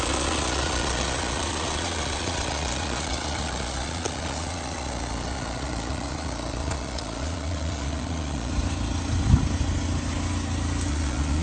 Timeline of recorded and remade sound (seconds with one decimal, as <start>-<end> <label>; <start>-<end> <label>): 0.0-8.5 remade; 8.5-10.9 recorded; 10.9-11.4 remade

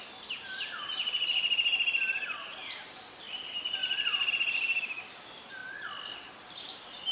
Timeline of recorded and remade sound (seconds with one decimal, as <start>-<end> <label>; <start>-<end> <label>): 0.0-7.1 recorded

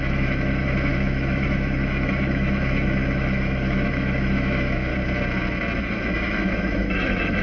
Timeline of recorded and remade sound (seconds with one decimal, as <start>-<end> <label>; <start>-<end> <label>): 0.0-4.9 remade; 4.9-5.8 recorded; 5.8-7.4 remade

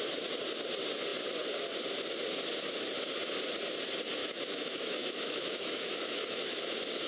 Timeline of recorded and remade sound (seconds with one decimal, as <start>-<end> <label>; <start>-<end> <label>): 0.0-4.2 recorded; 4.2-6.6 remade; 6.6-7.1 recorded

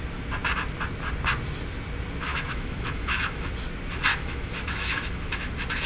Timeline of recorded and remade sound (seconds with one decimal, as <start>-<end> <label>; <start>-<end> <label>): 0.0-2.3 recorded; 2.3-3.5 remade; 3.5-4.1 recorded; 4.1-5.5 remade; 5.5-5.9 recorded